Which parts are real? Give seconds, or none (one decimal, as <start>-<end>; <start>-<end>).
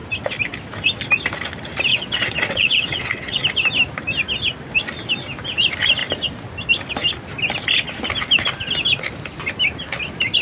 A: 0.0-1.9; 3.4-10.4